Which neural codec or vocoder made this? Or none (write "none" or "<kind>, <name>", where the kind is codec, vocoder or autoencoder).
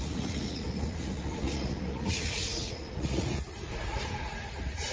vocoder, Vocos